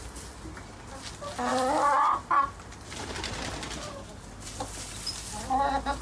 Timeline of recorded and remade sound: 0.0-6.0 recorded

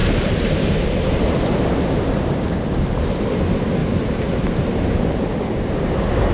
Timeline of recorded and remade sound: 0.0-3.4 remade; 3.4-3.8 recorded; 3.8-6.3 remade

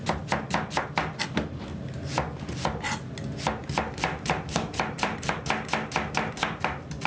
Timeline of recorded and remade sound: 0.0-1.7 recorded; 1.7-2.4 remade; 2.4-3.6 recorded; 3.6-5.4 remade; 5.4-7.1 recorded

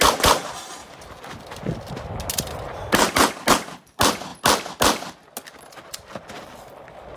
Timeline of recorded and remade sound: 0.0-7.2 recorded

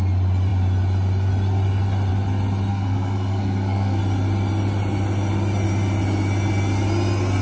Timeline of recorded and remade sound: 0.0-2.7 recorded; 2.7-4.0 remade; 4.0-7.4 recorded

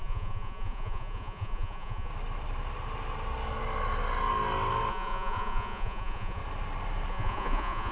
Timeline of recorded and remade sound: 0.0-2.1 remade; 2.1-4.9 recorded; 4.9-6.4 remade; 6.4-7.1 recorded; 7.1-7.9 remade

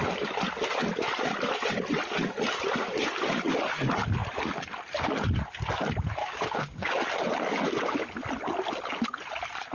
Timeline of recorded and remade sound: 0.0-6.2 recorded; 6.2-6.9 remade; 6.9-9.7 recorded

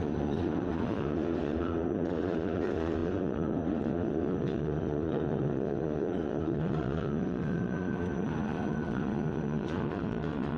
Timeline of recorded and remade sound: 0.0-10.6 remade